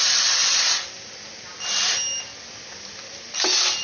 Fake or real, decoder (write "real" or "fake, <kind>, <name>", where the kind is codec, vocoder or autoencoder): real